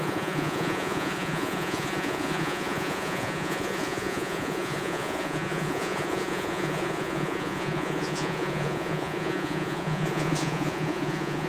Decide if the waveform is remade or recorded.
remade